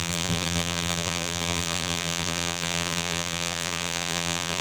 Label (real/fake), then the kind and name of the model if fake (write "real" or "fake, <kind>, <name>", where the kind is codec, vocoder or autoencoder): fake, vocoder, BigVGAN v2